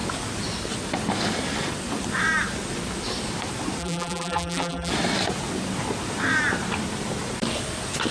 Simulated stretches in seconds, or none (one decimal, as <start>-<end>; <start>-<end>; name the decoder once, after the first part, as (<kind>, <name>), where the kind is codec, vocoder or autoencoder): 3.8-4.9 (vocoder, BigVGAN v2)